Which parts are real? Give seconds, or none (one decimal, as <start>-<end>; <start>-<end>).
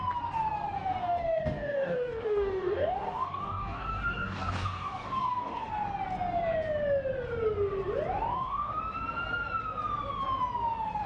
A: 0.0-1.0; 5.7-8.3; 8.8-11.1